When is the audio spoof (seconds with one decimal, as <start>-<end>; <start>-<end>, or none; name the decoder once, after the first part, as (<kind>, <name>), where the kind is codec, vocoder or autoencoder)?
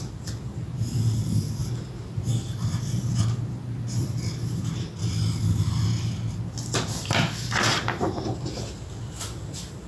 1.6-2.3 (vocoder, BigVGAN v2); 7.7-8.2